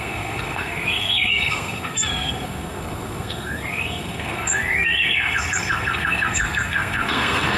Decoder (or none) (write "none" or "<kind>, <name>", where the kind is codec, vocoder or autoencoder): codec, SNAC